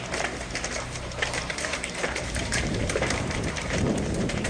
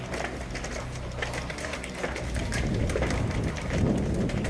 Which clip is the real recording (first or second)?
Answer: second